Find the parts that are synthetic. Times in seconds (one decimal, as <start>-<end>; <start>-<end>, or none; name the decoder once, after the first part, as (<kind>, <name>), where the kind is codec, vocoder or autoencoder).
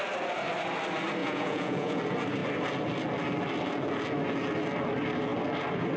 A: 1.2-2.0 (vocoder, Vocos)